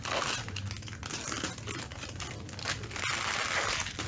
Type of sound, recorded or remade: recorded